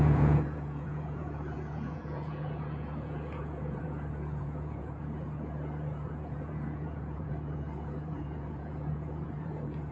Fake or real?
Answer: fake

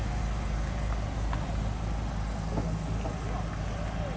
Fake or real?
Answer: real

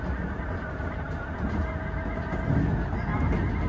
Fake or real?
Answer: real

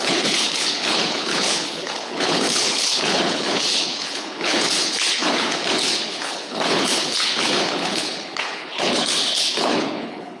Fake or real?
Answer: fake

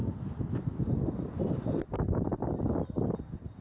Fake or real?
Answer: real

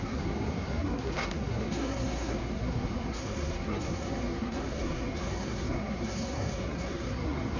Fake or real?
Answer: fake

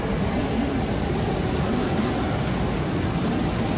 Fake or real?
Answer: real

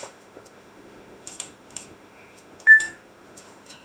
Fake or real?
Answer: fake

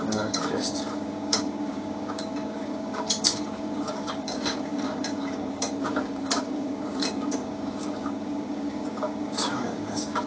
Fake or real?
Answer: fake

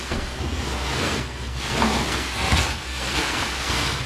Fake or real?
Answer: fake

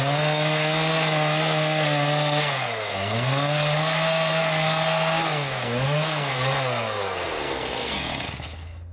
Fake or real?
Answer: fake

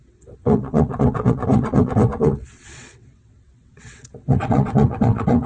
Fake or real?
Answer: fake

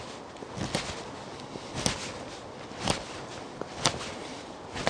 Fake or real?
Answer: real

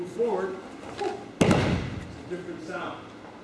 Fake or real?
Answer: real